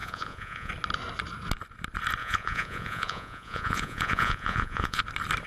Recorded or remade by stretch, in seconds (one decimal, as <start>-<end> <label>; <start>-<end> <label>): 0.0-0.7 remade; 0.7-2.2 recorded; 2.2-5.0 remade; 5.0-5.5 recorded